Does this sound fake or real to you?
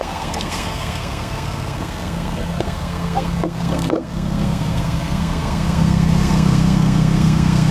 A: fake